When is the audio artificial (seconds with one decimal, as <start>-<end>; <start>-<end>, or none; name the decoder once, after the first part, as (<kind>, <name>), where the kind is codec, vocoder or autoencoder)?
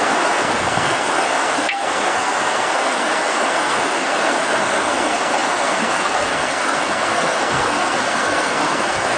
0.0-9.2 (codec, SNAC)